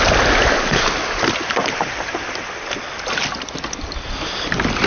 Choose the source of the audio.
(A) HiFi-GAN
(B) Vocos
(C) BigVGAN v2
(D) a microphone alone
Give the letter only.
D